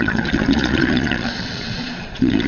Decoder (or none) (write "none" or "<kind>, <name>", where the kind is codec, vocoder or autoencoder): vocoder, Vocos